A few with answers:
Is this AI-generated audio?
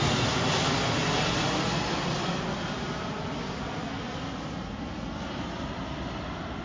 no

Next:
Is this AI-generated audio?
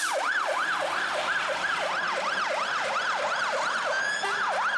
no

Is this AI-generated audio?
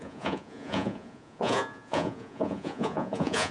yes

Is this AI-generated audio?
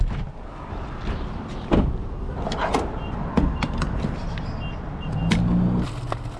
no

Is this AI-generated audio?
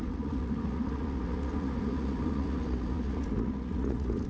yes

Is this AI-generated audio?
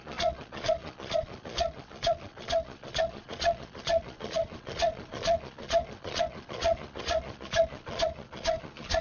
yes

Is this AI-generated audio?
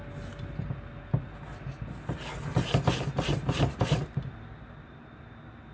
no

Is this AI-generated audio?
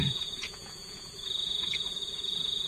yes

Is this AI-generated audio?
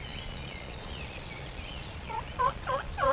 yes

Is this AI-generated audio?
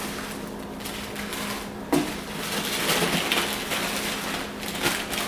no